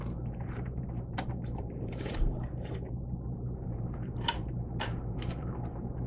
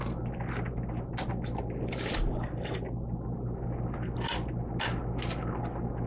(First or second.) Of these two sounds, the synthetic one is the first